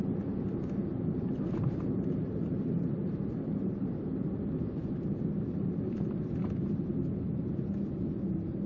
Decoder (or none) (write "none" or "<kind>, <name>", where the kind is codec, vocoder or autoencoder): vocoder, BigVGAN v2